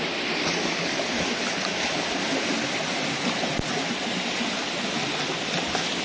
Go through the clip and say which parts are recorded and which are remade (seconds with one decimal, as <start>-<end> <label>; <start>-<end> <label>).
0.0-6.0 recorded